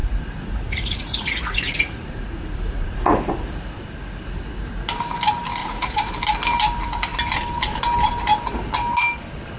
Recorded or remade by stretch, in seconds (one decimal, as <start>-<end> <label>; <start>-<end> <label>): 0.0-3.8 remade; 3.8-5.6 recorded; 5.6-6.1 remade; 6.1-9.6 recorded